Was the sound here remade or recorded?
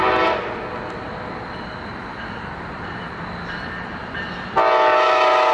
recorded